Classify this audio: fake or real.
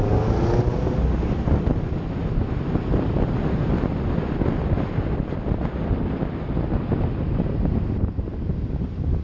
real